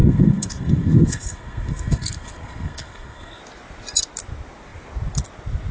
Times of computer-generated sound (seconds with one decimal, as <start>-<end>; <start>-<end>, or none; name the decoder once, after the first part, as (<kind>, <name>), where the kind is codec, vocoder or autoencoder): 0.0-3.4 (codec, SNAC)

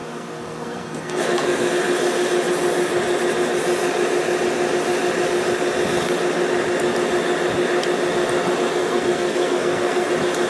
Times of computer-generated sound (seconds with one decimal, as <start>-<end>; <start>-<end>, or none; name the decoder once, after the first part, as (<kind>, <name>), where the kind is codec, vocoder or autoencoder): 0.0-1.7 (codec, SNAC); 8.8-10.1